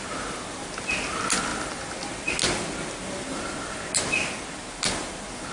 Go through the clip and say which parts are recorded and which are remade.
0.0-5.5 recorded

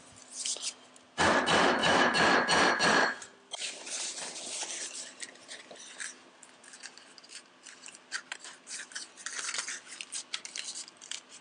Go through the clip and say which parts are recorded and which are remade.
0.0-11.4 recorded

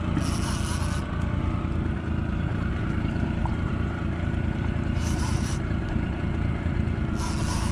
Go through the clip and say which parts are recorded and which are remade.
0.0-2.5 recorded; 2.5-6.1 remade; 6.1-7.7 recorded

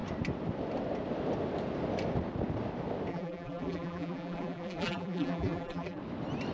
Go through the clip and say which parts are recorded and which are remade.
0.0-3.1 recorded; 3.1-6.0 remade; 6.0-6.5 recorded

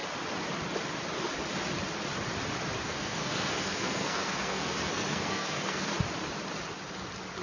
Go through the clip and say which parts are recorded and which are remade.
0.0-2.8 recorded; 2.8-5.9 remade; 5.9-7.4 recorded

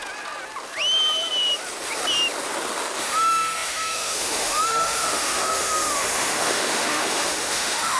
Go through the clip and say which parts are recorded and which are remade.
0.0-3.0 recorded; 3.0-8.0 remade

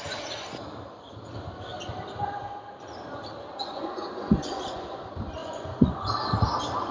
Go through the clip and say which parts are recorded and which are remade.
0.0-3.6 recorded; 3.6-5.0 remade; 5.0-5.4 recorded; 5.4-6.1 remade; 6.1-6.9 recorded